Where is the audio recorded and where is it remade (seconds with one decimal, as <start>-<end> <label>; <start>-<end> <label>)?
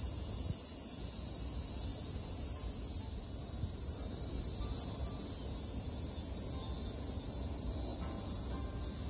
0.0-9.1 recorded